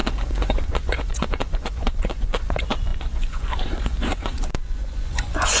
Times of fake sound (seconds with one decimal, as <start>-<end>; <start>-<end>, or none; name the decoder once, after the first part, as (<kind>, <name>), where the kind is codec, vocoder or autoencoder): 0.0-5.6 (vocoder, Vocos)